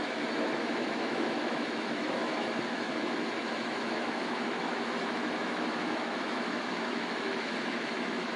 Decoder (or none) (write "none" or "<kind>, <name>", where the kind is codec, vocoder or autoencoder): autoencoder, DAC-VAE